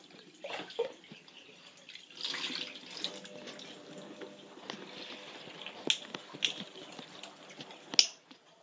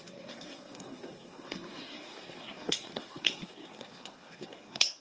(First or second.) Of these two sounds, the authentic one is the first